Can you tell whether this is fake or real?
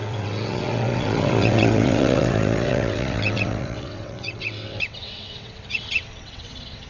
fake